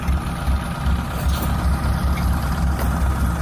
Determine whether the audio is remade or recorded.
recorded